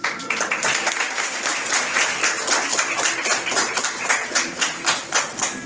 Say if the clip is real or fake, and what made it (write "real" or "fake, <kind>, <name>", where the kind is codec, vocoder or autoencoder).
real